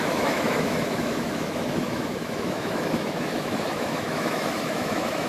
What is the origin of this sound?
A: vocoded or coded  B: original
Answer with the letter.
A